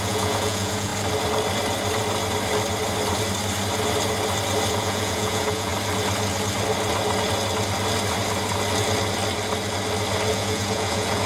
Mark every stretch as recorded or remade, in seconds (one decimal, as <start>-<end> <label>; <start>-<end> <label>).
0.0-0.9 remade; 0.9-4.7 recorded; 4.7-5.7 remade; 5.7-10.3 recorded; 10.3-11.3 remade